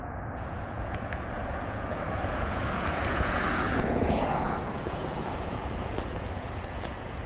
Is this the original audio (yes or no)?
no